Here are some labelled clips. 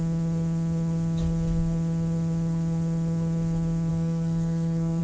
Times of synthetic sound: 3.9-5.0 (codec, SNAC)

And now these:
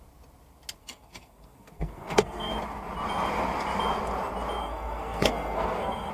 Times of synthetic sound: 0.8-2.5 (codec, SNAC); 4.6-6.1

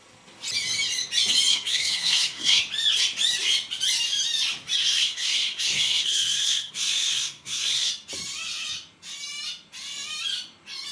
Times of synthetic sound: 1.5-2.6 (codec, SNAC); 4.8-7.9

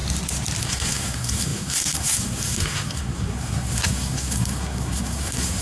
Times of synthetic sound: 0.6-5.6 (codec, SNAC)

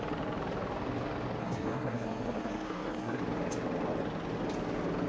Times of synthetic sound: 1.4-3.2 (codec, SNAC)

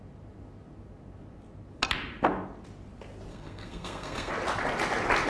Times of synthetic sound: 3.3-4.3 (codec, SNAC)

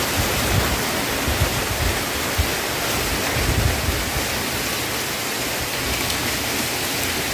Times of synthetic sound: none